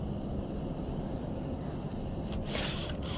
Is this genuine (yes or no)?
yes